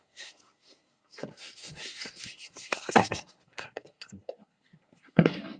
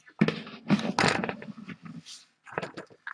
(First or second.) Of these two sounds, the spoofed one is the first